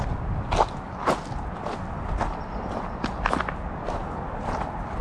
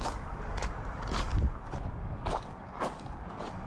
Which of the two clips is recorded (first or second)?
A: first